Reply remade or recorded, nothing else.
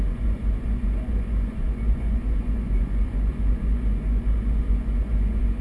remade